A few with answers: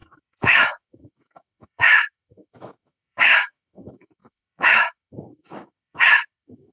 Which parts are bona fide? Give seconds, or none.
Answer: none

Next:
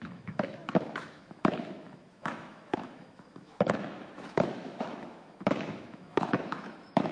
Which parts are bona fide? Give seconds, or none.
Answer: none

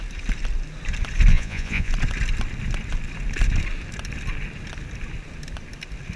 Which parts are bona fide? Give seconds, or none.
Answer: 0.0-1.3; 1.9-6.2